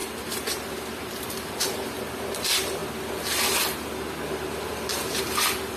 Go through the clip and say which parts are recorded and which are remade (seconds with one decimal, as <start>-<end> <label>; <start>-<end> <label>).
0.0-5.8 recorded